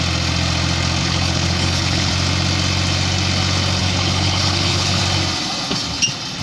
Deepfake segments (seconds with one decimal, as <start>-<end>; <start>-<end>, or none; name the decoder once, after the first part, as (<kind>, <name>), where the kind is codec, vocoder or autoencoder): 1.0-2.1 (codec, HILCodec); 3.8-5.0